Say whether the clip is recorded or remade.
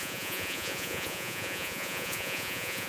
remade